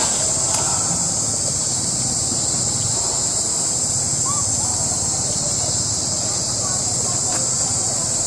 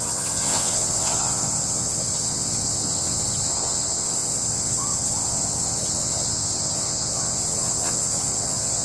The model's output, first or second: second